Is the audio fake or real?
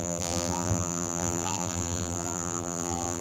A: fake